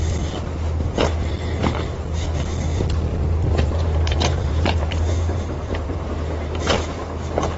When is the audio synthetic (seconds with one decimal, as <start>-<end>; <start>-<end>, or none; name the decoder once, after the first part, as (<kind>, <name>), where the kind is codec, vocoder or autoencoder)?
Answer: 3.1-6.8 (vocoder, BigVGAN v2)